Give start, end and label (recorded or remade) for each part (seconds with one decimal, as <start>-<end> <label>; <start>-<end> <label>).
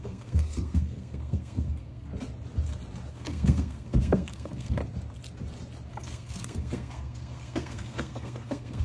0.0-2.1 remade; 2.1-3.1 recorded; 3.1-4.8 remade; 4.8-5.9 recorded; 5.9-8.8 remade